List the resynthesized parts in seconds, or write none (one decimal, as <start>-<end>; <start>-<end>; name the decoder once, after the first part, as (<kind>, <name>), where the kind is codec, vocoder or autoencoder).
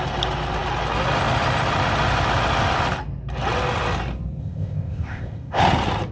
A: 4.4-5.6 (codec, ZipCodec)